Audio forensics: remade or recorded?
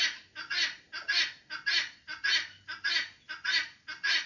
recorded